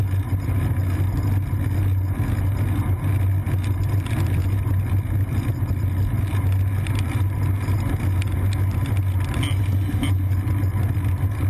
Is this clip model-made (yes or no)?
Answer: no